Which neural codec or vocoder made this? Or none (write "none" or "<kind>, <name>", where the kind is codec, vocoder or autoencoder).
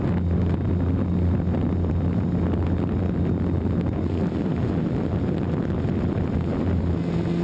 none